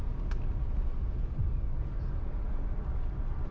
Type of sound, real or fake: real